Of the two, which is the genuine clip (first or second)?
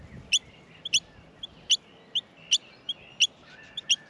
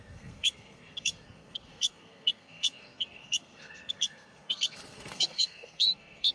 first